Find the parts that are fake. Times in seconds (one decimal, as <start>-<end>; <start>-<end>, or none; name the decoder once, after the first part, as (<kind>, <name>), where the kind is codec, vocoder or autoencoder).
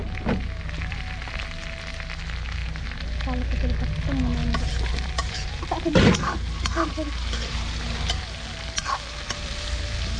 2.6-3.2 (vocoder, BigVGAN v2); 4.4-8.2